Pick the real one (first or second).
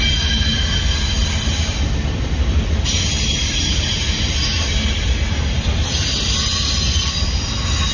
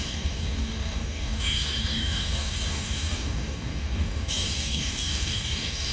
first